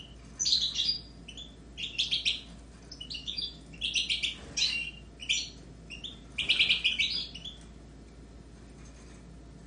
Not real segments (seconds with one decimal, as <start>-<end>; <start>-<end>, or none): 3.2-3.8